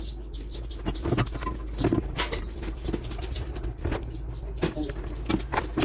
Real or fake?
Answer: real